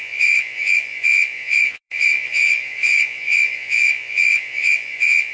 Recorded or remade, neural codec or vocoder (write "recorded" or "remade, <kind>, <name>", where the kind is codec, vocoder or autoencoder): remade, vocoder, Vocos